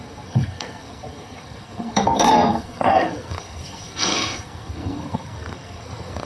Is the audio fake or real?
fake